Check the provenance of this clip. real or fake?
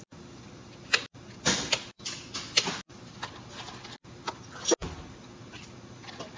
real